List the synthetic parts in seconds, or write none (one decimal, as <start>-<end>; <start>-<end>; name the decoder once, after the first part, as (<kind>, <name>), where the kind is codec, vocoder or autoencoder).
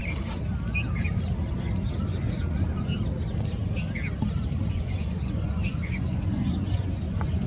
2.0-2.9 (vocoder, Vocos); 4.7-7.5